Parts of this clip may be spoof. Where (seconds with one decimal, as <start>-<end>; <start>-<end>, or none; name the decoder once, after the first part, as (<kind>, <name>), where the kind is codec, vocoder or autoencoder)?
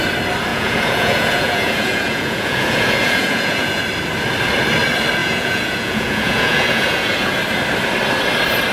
0.5-3.8 (vocoder, Vocos); 5.2-7.4